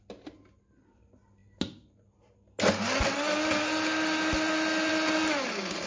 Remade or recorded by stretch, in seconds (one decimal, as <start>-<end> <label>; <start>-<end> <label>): 0.0-5.9 recorded

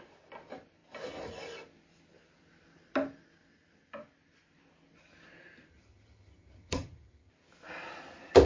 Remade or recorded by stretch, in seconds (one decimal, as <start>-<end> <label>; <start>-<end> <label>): 0.0-5.7 recorded; 5.7-7.3 remade; 7.3-8.5 recorded

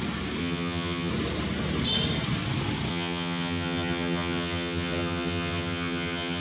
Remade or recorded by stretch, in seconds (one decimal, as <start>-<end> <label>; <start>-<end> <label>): 0.0-0.4 recorded; 0.4-1.1 remade; 1.1-2.9 recorded; 2.9-6.4 remade